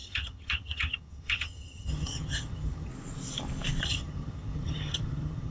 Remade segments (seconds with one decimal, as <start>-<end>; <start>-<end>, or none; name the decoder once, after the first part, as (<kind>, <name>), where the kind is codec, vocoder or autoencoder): 0.0-2.9 (vocoder, HiFi-GAN); 3.8-5.5